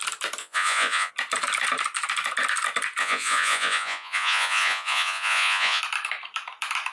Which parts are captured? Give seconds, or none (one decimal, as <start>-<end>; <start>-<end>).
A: 0.0-0.4; 1.1-3.0; 5.8-6.9